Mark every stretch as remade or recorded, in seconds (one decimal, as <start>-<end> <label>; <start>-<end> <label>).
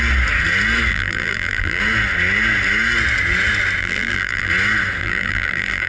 0.0-0.9 recorded; 0.9-1.8 remade; 1.8-3.8 recorded; 3.8-4.5 remade; 4.5-5.0 recorded; 5.0-5.9 remade